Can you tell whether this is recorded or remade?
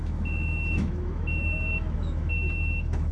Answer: remade